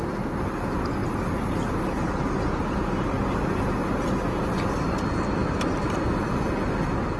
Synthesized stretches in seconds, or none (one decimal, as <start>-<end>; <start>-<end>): none